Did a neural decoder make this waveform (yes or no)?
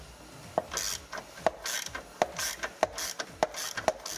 no